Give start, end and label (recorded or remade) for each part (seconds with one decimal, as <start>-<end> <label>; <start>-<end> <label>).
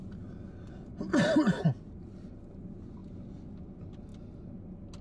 0.0-5.0 recorded